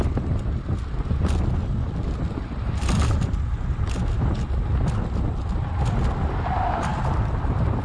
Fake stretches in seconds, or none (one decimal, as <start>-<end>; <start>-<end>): 6.9-7.8